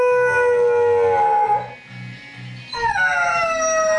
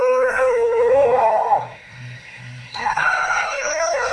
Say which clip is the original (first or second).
first